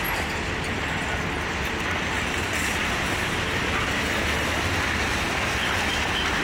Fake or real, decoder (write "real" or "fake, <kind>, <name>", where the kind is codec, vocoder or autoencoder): real